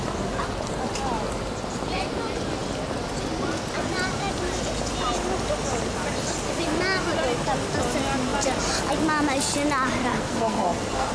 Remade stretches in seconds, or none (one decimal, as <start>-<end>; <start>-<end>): 10.1-11.1